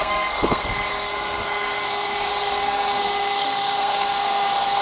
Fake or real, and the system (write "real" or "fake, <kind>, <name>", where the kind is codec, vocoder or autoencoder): fake, codec, SNAC